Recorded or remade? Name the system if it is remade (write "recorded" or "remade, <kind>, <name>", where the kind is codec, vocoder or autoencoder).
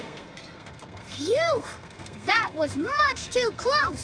remade, codec, SNAC